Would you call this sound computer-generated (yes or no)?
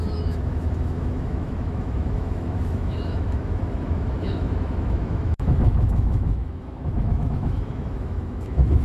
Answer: yes